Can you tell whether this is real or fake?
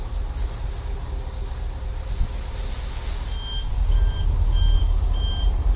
real